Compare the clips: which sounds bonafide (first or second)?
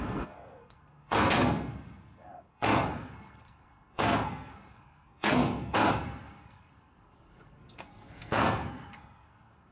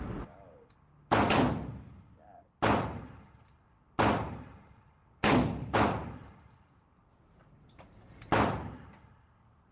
second